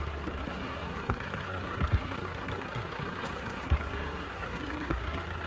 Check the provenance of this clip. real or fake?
fake